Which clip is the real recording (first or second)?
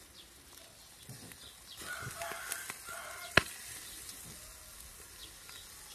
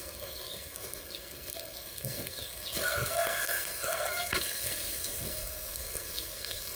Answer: first